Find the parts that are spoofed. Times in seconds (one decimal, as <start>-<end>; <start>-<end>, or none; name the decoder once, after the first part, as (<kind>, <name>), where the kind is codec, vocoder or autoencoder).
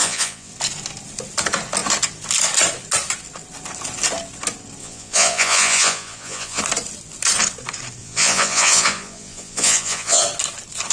0.0-0.5 (vocoder, Vocos); 4.8-6.6; 8.0-10.2